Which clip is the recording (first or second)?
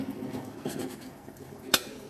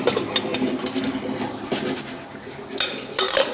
second